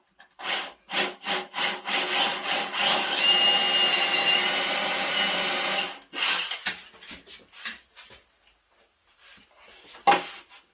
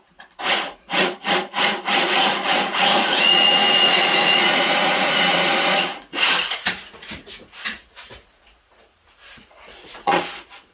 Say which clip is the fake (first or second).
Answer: second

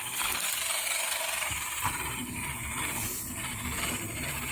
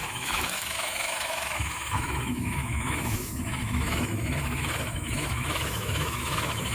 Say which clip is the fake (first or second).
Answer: second